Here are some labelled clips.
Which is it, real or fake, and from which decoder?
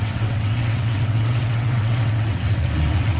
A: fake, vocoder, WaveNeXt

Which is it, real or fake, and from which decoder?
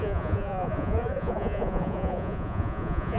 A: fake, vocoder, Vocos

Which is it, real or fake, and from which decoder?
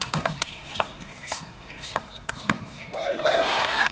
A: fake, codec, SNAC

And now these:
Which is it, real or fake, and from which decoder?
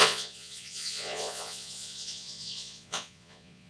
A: fake, vocoder, Vocos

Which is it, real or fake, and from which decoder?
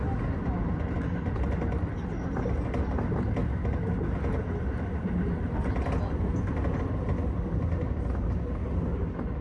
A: real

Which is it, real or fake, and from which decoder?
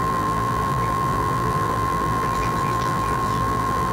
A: fake, vocoder, BigVGAN v2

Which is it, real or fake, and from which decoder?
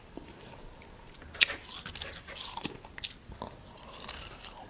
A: real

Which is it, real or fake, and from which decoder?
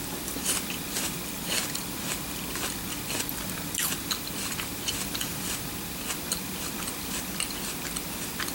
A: real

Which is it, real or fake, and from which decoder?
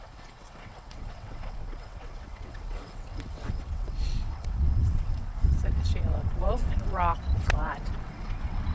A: fake, vocoder, WaveNeXt